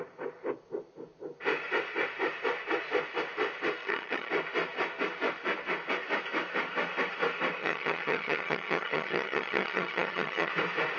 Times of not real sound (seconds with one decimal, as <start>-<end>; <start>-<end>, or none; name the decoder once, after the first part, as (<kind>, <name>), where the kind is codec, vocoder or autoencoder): 3.8-4.3 (vocoder, HiFi-GAN); 7.6-10.5